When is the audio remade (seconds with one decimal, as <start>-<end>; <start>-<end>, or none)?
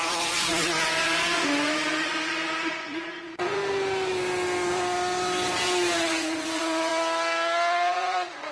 0.0-3.6; 6.1-6.9; 7.9-8.5